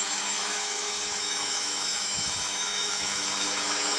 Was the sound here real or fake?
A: fake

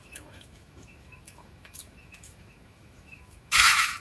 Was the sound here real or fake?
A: fake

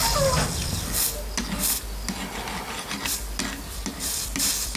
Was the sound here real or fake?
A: real